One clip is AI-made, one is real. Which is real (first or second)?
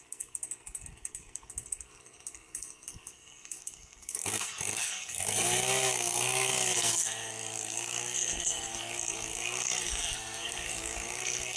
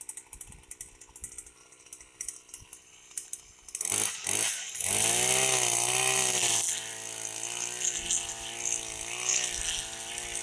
second